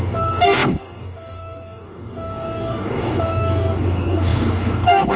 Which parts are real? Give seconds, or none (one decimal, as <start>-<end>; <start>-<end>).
none